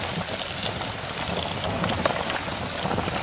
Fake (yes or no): no